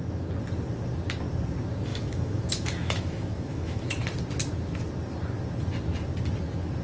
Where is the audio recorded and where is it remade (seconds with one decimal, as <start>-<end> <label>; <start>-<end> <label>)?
0.0-1.9 recorded; 1.9-4.0 remade; 4.0-6.8 recorded